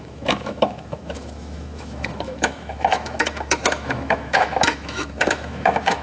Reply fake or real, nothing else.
fake